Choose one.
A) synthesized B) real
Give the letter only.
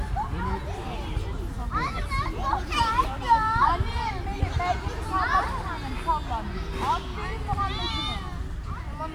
B